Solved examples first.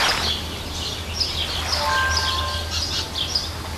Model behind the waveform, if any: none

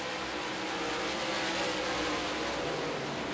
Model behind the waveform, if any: none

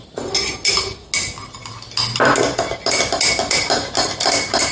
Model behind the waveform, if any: none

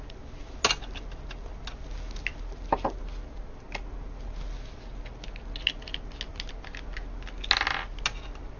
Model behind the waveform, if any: none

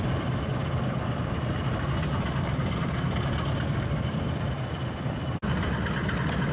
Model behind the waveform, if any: none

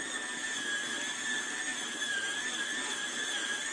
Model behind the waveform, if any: none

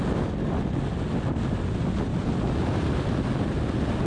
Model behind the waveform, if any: none